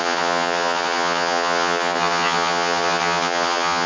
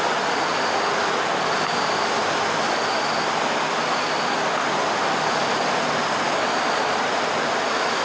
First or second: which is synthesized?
first